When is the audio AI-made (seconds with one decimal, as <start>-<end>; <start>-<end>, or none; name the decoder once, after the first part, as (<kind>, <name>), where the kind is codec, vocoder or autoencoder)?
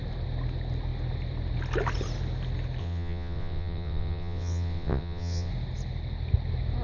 2.8-5.5 (vocoder, WaveNeXt)